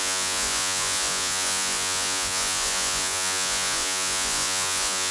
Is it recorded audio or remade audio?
remade